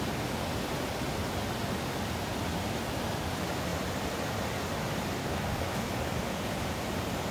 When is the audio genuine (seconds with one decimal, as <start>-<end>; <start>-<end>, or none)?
0.0-5.2; 5.9-7.3